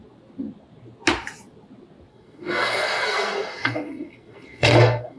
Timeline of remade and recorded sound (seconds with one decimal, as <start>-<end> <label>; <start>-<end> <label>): 0.0-2.1 recorded; 2.1-5.2 remade